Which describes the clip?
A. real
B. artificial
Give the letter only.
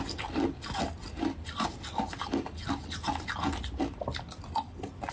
A